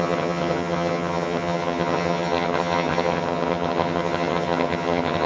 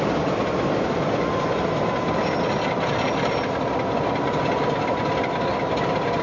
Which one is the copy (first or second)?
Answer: first